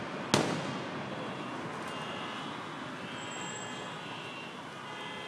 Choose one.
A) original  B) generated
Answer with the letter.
A